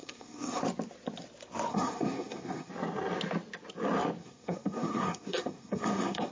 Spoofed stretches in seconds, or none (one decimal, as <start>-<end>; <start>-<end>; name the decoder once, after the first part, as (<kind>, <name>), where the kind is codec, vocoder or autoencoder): 0.0-0.6 (codec, SNAC); 1.7-2.7; 4.2-6.3